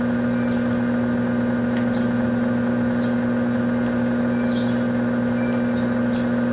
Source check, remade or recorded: recorded